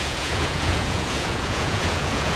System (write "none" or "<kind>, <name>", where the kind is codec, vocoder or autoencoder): vocoder, Vocos